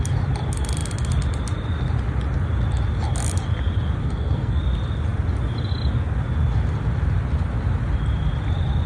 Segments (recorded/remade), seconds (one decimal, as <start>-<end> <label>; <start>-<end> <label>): 0.0-4.0 recorded; 4.0-4.6 remade; 4.6-8.9 recorded